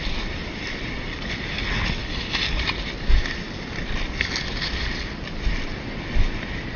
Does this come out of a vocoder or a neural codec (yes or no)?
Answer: no